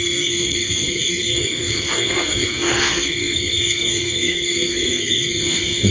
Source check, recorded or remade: remade